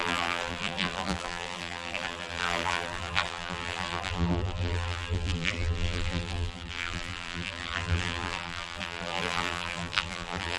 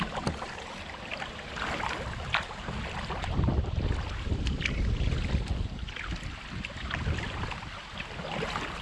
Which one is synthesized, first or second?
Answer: first